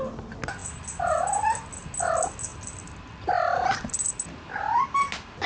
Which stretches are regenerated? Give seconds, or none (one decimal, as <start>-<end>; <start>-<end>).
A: none